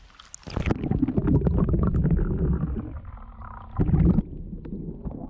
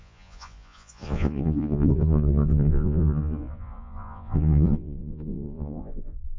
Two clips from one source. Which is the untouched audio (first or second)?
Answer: first